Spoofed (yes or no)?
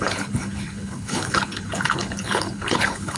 yes